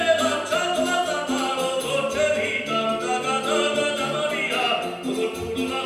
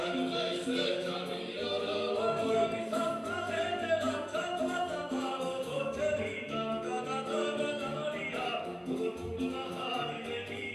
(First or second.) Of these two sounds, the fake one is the second